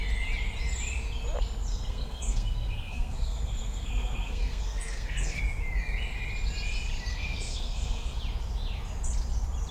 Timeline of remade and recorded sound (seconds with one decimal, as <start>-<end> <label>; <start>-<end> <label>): 0.0-1.7 recorded; 1.7-5.4 remade; 5.4-7.1 recorded; 7.1-8.2 remade; 8.2-9.7 recorded